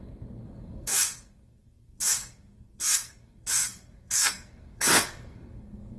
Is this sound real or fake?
fake